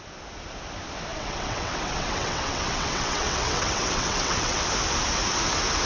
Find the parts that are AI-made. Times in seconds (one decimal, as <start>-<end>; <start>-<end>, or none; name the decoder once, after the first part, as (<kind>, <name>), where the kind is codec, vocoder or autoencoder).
1.1-4.6 (vocoder, WaveNeXt)